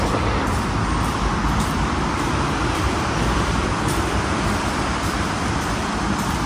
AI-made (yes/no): yes